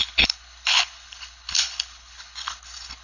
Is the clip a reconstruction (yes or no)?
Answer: yes